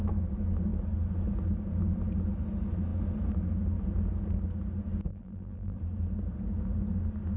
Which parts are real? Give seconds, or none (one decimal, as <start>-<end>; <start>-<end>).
0.0-5.1; 5.8-7.4